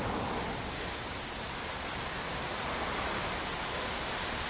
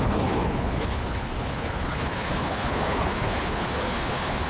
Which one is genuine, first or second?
first